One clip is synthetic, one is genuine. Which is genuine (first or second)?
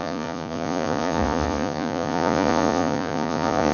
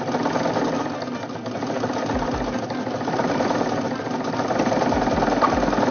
second